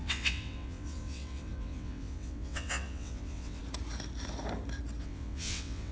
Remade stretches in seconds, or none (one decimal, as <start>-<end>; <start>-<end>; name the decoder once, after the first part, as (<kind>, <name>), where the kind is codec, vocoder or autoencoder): 0.0-3.6 (vocoder, WaveNeXt); 5.0-5.9